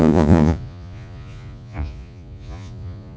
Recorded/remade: remade